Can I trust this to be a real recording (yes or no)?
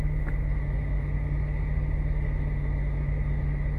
yes